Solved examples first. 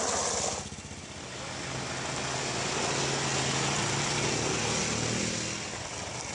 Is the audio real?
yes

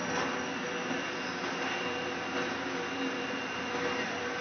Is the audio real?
no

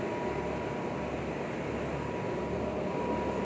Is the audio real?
yes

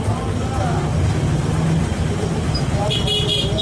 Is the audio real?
yes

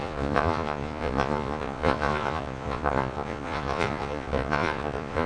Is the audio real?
no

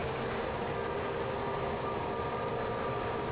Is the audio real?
yes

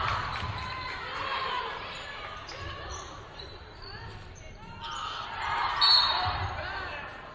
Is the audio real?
no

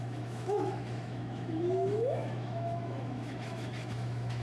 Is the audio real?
no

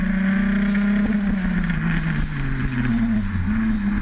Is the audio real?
yes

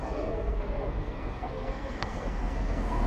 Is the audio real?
no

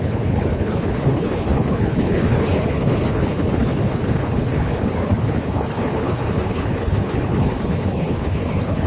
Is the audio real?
no